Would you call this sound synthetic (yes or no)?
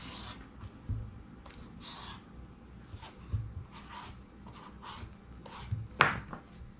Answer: no